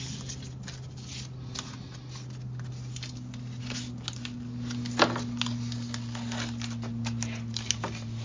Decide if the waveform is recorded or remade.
recorded